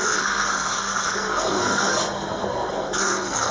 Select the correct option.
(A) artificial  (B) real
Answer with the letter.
A